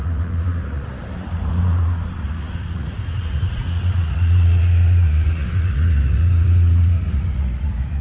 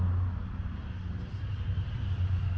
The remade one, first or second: first